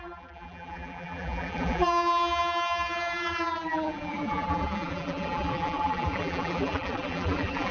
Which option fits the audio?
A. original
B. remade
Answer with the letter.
B